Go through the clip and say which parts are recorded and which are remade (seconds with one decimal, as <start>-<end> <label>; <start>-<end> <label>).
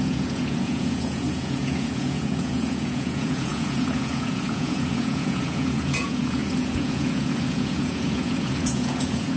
0.0-9.4 remade